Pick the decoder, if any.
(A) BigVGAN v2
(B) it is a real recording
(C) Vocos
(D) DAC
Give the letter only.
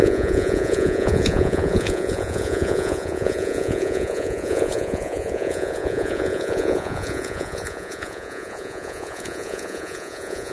C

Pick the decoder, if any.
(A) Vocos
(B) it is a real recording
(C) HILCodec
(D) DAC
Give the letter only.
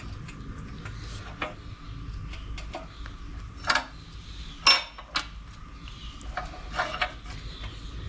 B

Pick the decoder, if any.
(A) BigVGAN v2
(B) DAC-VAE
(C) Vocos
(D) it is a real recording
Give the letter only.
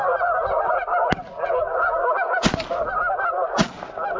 D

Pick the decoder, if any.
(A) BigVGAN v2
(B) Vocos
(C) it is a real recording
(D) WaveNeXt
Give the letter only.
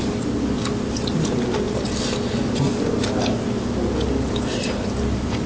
C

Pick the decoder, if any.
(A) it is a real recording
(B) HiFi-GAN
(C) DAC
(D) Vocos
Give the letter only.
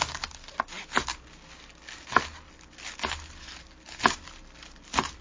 A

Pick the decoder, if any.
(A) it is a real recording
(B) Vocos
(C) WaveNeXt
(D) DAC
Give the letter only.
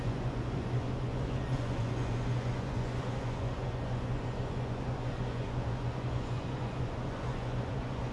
B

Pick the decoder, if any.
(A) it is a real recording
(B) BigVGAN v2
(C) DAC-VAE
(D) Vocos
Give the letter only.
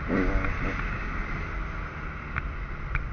A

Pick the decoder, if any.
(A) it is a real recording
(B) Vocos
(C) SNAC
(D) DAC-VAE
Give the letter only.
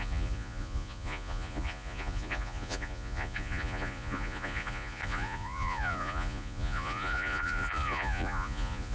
B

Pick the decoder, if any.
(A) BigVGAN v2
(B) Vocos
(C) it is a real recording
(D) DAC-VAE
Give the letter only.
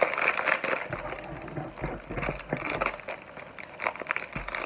C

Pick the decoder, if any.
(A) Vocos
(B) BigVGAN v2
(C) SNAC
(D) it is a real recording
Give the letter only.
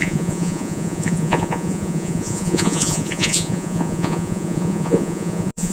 A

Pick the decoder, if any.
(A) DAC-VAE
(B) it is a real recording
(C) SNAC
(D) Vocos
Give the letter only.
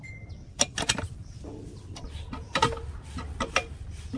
B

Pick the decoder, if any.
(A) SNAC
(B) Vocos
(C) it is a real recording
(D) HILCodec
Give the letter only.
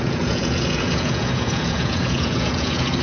B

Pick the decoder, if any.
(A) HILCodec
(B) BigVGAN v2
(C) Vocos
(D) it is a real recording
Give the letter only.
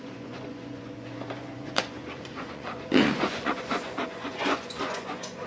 C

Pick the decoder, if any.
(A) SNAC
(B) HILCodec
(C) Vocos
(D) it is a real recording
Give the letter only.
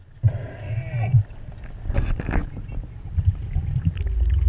D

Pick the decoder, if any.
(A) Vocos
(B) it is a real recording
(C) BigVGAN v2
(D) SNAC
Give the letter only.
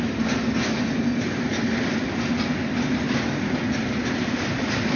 B